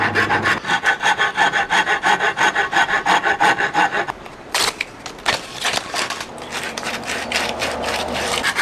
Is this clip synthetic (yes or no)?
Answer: no